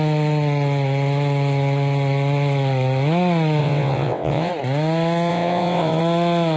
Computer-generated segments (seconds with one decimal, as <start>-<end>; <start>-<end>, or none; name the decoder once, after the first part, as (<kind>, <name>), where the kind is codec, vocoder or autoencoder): 3.6-4.5 (vocoder, WaveNeXt); 5.3-6.0